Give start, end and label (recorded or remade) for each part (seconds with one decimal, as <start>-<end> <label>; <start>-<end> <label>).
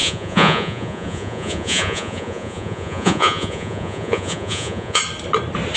0.0-5.0 remade; 5.0-5.8 recorded